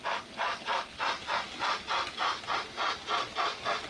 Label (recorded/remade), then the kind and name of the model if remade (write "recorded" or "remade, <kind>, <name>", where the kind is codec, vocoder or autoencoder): recorded